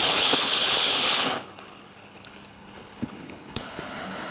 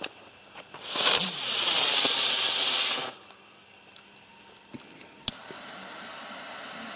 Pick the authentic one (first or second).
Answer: second